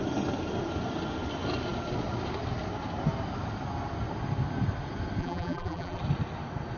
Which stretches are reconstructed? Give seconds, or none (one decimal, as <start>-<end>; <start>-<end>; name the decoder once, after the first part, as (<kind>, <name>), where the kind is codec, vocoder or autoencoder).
5.2-6.0 (vocoder, BigVGAN v2)